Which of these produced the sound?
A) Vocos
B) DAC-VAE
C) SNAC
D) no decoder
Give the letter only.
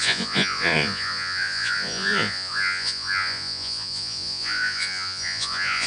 A